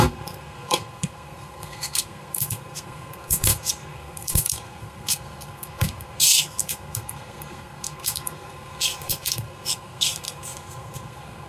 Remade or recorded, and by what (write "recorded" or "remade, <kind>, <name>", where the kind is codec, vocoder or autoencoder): remade, codec, SNAC